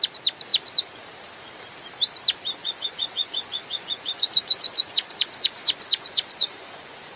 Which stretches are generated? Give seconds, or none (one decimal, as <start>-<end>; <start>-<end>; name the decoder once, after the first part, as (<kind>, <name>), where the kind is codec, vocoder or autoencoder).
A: 2.6-7.2 (vocoder, Vocos)